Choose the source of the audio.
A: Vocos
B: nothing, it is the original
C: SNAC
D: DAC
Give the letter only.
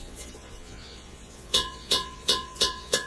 A